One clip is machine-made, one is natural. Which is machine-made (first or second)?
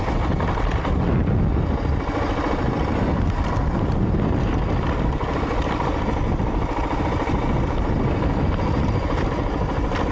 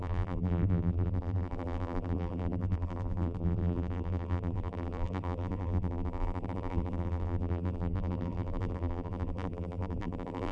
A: second